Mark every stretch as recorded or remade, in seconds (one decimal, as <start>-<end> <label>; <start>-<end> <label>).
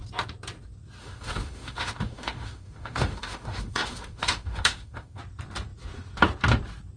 0.0-1.0 recorded; 1.0-5.2 remade; 5.2-7.0 recorded